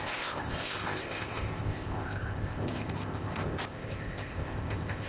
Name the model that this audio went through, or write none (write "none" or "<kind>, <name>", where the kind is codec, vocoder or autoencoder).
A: codec, ZipCodec